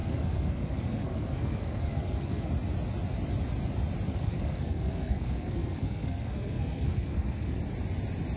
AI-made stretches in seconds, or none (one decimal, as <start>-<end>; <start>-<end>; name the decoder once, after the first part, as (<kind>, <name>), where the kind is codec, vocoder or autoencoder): 0.0-2.5 (codec, SNAC); 4.1-7.6

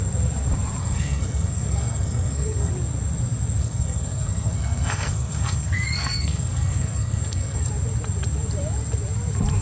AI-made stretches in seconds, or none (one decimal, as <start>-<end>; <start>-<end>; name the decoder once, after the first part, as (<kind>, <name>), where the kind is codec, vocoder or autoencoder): 0.8-2.7 (codec, SNAC); 3.6-7.7

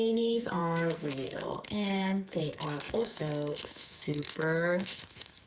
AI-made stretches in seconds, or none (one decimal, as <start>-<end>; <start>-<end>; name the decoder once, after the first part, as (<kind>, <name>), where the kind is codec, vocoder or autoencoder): 0.0-5.5 (codec, SNAC)

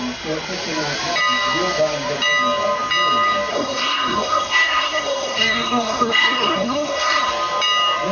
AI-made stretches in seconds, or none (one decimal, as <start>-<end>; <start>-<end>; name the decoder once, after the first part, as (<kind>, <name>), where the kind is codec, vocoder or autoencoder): 3.5-7.3 (codec, SNAC)